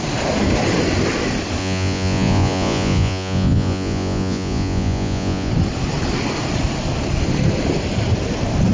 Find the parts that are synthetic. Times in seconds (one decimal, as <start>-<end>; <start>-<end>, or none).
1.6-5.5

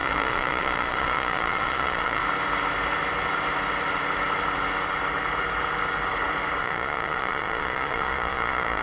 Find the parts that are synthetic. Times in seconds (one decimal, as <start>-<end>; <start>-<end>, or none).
0.0-2.2; 6.6-8.8

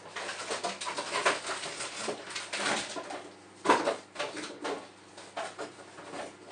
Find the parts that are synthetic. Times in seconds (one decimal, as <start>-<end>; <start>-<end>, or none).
none

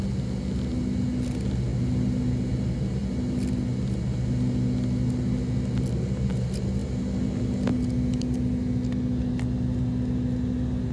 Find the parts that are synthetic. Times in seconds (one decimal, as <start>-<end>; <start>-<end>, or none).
none

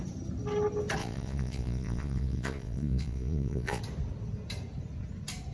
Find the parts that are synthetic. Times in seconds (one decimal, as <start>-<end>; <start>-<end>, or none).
1.0-3.8